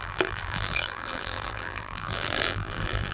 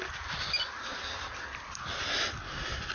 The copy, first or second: first